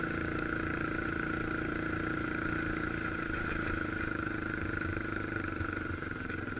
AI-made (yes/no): yes